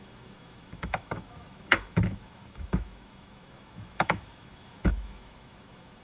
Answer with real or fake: fake